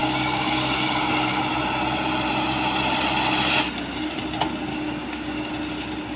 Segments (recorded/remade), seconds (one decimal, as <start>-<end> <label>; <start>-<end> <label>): 0.0-1.4 remade; 1.4-4.7 recorded; 4.7-5.5 remade; 5.5-6.2 recorded